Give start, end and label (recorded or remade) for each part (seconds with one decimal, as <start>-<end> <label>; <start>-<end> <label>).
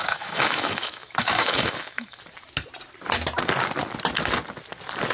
0.0-2.2 remade; 2.2-5.1 recorded